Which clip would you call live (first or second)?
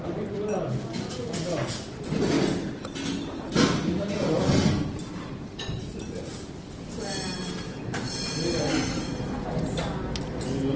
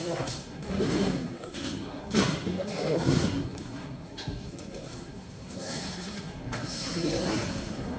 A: first